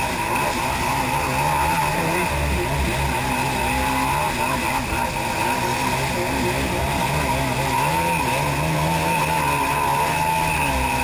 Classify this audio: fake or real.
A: real